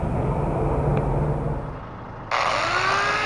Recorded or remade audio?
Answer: recorded